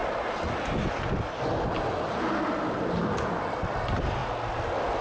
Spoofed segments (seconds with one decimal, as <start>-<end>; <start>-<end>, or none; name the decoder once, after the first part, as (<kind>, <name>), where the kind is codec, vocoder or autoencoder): none